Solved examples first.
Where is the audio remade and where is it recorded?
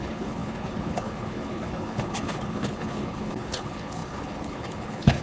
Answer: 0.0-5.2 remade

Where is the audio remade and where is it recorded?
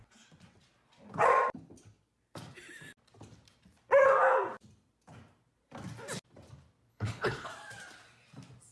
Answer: 0.0-6.9 recorded; 6.9-7.5 remade; 7.5-8.7 recorded